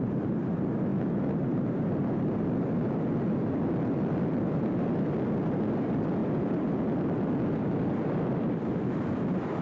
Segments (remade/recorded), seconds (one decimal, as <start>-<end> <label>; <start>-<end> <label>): 0.0-9.6 recorded